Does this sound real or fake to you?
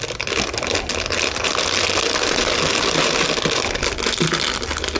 real